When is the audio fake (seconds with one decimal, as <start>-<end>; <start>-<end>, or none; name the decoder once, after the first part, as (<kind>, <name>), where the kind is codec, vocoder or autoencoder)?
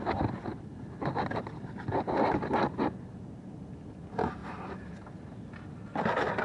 none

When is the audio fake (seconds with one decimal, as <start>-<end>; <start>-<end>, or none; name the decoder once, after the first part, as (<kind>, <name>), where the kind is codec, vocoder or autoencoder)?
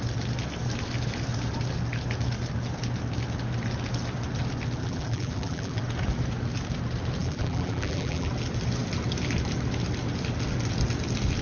4.8-5.8 (vocoder, BigVGAN v2); 7.2-8.3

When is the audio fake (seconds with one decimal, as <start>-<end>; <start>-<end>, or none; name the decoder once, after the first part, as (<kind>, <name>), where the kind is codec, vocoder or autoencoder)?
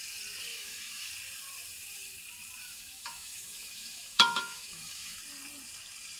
0.5-1.1 (autoencoder, DAC-VAE); 2.6-5.2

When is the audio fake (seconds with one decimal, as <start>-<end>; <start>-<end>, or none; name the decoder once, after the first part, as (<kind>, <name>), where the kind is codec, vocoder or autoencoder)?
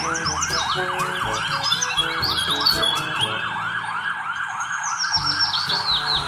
none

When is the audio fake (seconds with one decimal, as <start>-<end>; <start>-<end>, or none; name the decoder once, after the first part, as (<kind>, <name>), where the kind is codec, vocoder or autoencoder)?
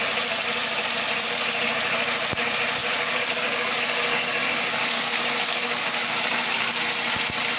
2.8-6.7 (codec, DAC)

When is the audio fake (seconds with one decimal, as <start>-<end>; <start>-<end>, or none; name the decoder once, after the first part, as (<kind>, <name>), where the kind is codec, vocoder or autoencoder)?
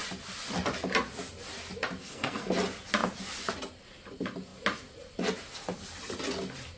2.0-2.5 (codec, SNAC)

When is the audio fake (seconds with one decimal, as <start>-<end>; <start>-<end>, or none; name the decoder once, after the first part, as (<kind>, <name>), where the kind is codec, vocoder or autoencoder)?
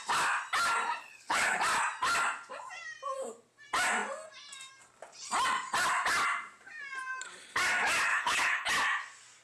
1.0-1.6 (codec, HILCodec); 8.1-8.7